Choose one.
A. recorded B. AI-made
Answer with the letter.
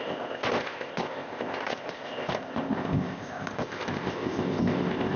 B